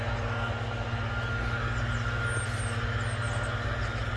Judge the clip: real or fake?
real